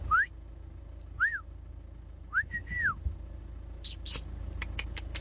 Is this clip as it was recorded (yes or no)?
yes